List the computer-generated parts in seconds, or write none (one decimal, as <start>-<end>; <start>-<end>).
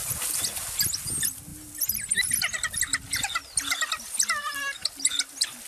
none